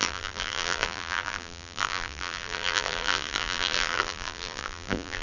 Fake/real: fake